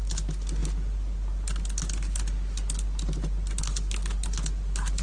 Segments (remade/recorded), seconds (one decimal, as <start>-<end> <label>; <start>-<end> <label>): 0.0-5.0 recorded